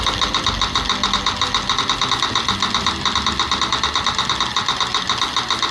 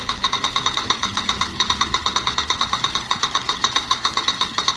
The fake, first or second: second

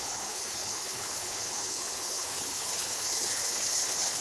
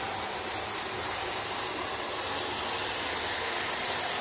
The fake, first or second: first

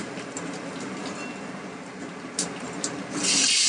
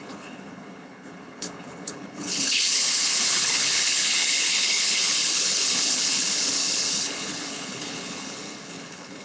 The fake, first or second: second